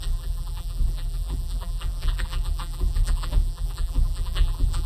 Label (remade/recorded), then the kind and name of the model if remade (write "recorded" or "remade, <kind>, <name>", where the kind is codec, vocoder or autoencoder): remade, vocoder, BigVGAN v2